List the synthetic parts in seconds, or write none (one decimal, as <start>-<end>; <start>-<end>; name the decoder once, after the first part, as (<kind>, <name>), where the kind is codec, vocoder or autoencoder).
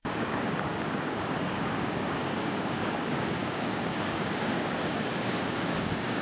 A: 0.0-6.2 (codec, DAC)